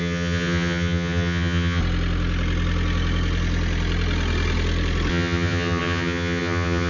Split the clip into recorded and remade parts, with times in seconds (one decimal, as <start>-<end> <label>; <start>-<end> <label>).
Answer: 0.0-1.8 remade; 1.8-5.1 recorded; 5.1-6.9 remade